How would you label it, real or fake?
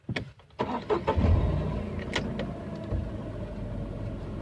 real